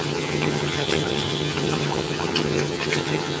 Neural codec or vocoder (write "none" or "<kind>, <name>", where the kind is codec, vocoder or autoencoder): vocoder, HiFi-GAN